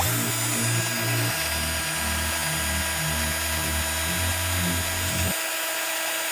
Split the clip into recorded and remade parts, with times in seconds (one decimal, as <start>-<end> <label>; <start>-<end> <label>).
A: 0.0-6.3 recorded

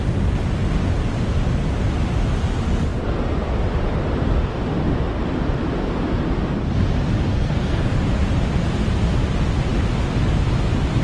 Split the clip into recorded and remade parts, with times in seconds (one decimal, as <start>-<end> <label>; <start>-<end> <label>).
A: 0.0-7.3 recorded; 7.3-7.8 remade; 7.8-11.0 recorded

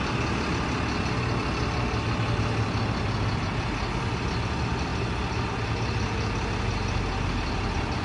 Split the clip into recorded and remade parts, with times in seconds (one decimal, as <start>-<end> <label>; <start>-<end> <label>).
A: 0.0-8.0 recorded

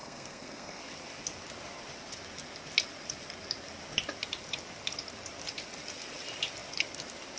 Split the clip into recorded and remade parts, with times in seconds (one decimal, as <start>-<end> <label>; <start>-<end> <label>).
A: 0.0-0.8 remade; 0.8-7.4 recorded